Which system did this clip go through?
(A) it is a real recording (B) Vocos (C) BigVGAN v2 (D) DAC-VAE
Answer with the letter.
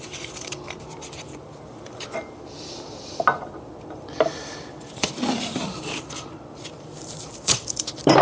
C